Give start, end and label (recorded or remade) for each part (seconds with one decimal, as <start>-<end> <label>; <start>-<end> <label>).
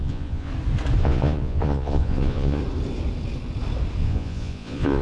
0.0-0.5 remade; 0.5-1.0 recorded; 1.0-2.6 remade; 2.6-4.0 recorded; 4.0-5.0 remade